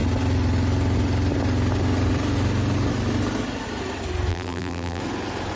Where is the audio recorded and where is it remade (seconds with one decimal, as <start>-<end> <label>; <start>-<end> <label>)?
0.0-4.3 recorded; 4.3-5.0 remade; 5.0-5.6 recorded